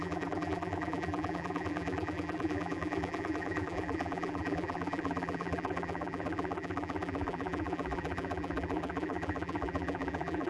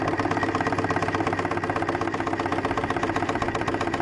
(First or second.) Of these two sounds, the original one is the second